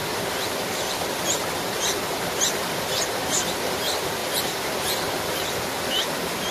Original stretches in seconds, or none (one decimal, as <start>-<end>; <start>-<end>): none